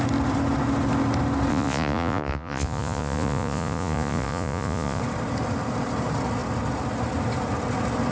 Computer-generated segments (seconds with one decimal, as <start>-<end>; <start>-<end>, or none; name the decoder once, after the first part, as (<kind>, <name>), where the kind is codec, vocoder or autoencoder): 1.5-5.0 (vocoder, Vocos)